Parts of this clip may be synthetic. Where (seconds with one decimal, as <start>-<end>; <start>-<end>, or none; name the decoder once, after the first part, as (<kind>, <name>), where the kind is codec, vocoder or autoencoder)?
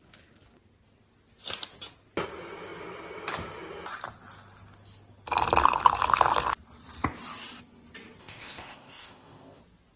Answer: 8.2-9.6 (codec, ZipCodec)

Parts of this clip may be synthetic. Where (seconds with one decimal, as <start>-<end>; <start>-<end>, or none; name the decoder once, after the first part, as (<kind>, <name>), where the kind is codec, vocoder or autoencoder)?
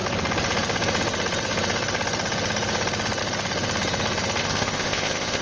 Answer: 4.4-5.4 (codec, ZipCodec)